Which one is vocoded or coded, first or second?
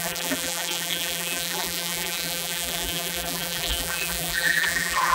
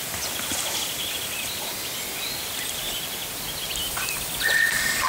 first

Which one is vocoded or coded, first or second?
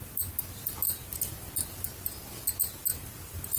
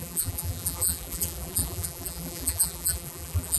second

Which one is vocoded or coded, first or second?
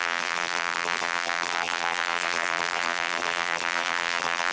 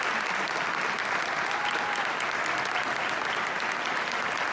first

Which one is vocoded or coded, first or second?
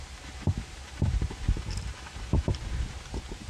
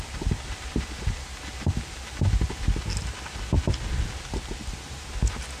first